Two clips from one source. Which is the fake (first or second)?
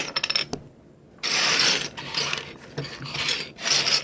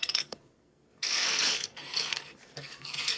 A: second